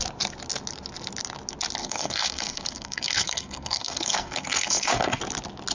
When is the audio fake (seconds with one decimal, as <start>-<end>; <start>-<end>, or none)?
1.8-5.2